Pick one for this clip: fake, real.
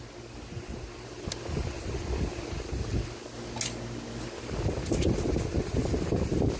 real